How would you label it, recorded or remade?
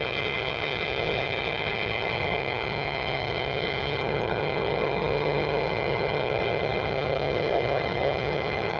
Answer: remade